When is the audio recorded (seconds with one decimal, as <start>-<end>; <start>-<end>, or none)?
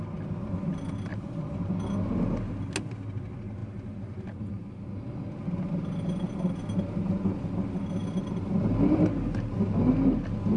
0.0-1.1; 1.7-10.6